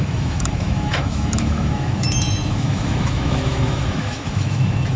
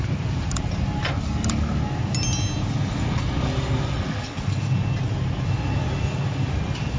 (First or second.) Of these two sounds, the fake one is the first